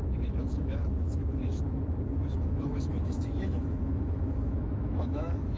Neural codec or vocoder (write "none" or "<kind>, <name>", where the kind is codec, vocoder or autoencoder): autoencoder, DAC-VAE